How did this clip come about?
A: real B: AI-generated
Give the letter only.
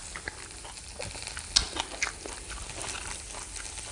A